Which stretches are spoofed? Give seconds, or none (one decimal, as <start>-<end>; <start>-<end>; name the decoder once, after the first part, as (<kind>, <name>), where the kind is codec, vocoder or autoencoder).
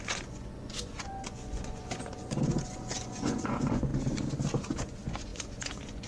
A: 0.0-3.9 (vocoder, Vocos); 4.7-6.1